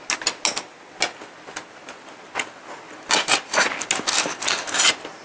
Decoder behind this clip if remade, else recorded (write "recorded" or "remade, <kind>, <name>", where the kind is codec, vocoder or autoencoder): recorded